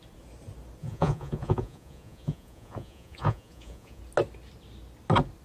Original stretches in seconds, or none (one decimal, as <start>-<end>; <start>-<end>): 0.0-0.8; 4.0-5.4